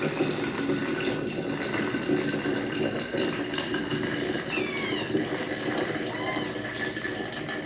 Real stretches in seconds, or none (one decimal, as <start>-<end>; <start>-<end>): 0.8-3.2